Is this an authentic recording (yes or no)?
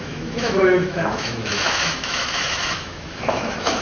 no